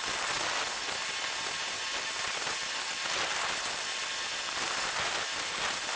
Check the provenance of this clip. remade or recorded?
recorded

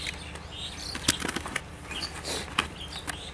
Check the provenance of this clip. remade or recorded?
recorded